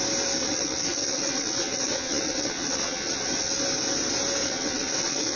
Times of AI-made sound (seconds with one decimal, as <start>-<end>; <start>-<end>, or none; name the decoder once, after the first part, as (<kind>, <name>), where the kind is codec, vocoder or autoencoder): 0.4-3.6 (vocoder, WaveNeXt); 4.4-5.4